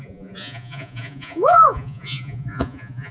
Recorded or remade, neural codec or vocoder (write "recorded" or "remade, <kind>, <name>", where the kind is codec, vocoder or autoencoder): remade, vocoder, Vocos